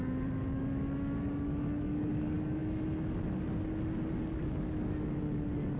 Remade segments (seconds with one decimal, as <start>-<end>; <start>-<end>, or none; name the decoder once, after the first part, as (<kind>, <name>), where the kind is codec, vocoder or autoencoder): 0.0-2.6 (codec, DAC); 4.2-5.8